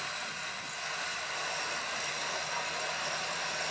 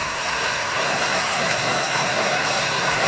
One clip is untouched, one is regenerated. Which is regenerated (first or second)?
second